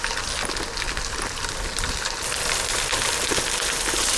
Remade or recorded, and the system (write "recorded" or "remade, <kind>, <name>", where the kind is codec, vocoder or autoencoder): recorded